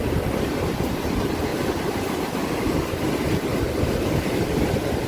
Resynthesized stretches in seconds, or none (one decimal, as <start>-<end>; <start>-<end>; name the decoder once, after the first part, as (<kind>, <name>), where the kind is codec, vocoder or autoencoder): none